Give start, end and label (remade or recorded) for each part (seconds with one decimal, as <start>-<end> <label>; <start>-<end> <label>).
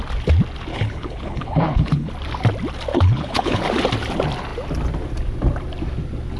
0.0-0.7 recorded; 0.7-2.1 remade; 2.1-2.9 recorded; 2.9-3.6 remade; 3.6-6.4 recorded